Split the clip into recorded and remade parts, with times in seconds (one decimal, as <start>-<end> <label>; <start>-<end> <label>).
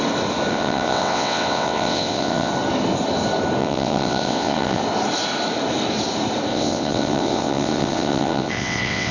0.0-0.5 recorded; 0.5-2.5 remade; 2.5-3.6 recorded; 3.6-4.8 remade; 4.8-6.5 recorded; 6.5-9.1 remade